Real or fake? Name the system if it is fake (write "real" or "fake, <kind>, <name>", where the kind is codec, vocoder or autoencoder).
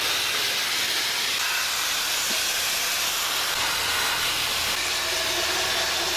real